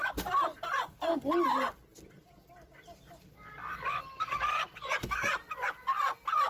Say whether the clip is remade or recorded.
recorded